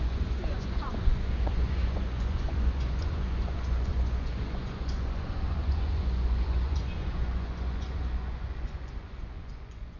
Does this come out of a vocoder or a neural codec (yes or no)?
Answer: yes